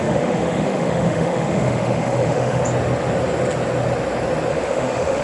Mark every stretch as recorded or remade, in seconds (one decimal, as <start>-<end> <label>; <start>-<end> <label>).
0.0-2.6 remade; 2.6-4.5 recorded; 4.5-5.2 remade